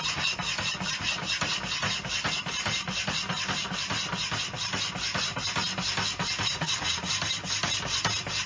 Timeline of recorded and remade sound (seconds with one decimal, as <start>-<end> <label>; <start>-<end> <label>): 0.0-6.5 recorded; 6.5-7.1 remade; 7.1-8.5 recorded